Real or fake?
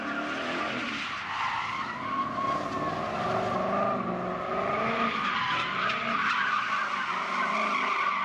real